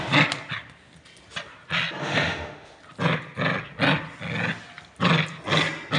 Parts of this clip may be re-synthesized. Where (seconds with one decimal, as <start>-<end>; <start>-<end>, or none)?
2.0-2.8